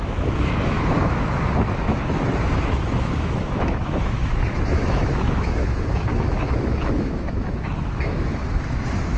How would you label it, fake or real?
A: fake